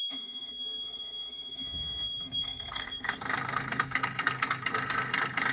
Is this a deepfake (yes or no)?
yes